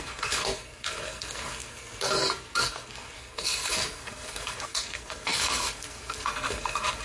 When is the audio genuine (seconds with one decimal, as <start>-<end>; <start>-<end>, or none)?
none